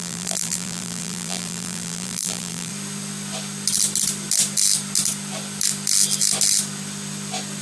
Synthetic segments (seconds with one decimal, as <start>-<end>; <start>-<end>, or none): 0.0-2.7